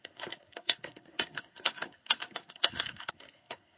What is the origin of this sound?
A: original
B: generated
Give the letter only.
B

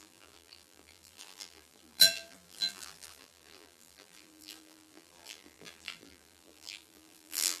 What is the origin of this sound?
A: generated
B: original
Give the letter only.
A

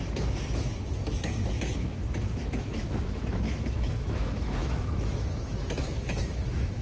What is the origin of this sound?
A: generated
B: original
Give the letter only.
A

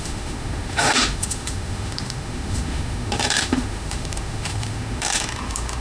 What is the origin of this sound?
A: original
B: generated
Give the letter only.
B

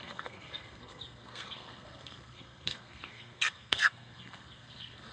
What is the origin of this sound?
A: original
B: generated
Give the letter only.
B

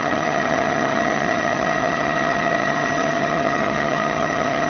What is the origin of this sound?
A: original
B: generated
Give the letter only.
B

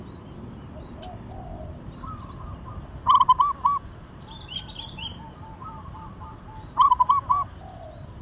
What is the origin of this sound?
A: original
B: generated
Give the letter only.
B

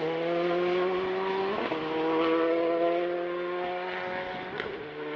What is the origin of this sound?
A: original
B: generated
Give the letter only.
A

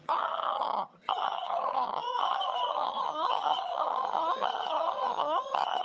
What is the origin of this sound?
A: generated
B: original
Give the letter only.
A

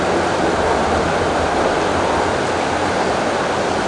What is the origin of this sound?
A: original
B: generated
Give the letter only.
A